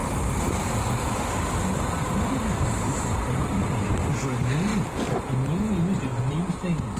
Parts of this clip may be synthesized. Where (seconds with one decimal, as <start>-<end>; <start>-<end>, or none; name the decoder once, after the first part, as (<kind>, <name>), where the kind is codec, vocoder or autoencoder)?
0.0-3.9 (vocoder, BigVGAN v2)